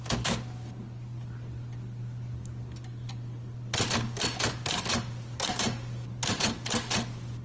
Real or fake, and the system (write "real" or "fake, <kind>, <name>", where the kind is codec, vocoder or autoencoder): real